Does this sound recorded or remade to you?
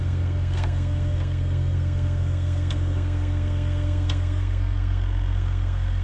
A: remade